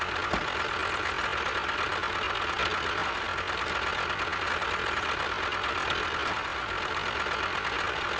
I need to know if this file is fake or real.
real